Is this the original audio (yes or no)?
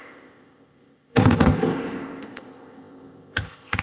no